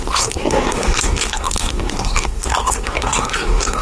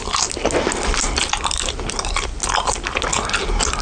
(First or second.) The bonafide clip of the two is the second